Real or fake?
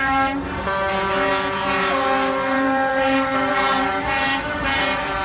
fake